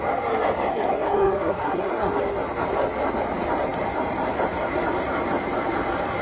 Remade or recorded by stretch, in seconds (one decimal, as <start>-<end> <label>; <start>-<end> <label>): 0.0-0.7 recorded; 0.7-2.1 remade; 2.1-6.2 recorded